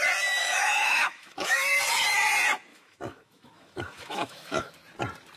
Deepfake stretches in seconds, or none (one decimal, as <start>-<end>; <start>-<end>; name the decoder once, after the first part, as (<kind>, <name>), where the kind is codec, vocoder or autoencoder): 0.4-1.8 (autoencoder, DAC-VAE); 2.7-4.7